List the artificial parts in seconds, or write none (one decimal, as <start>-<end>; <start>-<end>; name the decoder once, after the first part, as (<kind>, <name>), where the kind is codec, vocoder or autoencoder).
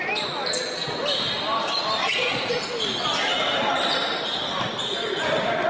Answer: 2.0-2.7 (vocoder, Vocos)